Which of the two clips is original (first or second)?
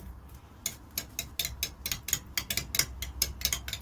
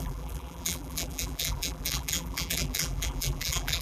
first